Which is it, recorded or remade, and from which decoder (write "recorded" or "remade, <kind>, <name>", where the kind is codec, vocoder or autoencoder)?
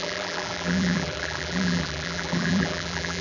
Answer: remade, vocoder, BigVGAN v2